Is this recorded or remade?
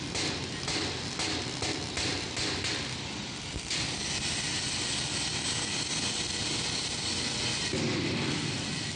recorded